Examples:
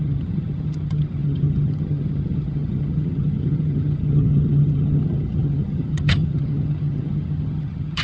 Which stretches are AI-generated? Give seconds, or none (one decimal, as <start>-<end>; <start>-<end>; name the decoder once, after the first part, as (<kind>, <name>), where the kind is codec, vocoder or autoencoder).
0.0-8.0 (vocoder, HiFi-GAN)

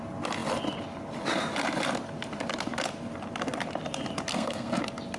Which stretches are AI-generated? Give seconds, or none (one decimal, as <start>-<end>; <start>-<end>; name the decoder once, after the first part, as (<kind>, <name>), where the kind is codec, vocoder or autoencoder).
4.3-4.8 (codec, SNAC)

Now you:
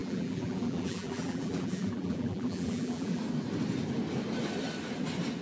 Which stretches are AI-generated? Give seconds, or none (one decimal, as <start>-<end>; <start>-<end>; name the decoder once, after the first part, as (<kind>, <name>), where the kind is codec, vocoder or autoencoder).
0.0-3.2 (vocoder, BigVGAN v2)